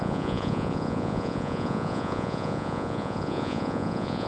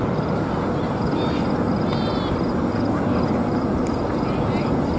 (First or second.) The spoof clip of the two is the first